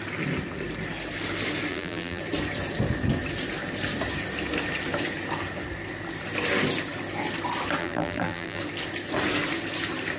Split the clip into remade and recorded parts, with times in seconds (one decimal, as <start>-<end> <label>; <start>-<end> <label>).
0.0-1.7 recorded; 1.7-2.2 remade; 2.2-7.8 recorded; 7.8-8.6 remade; 8.6-10.2 recorded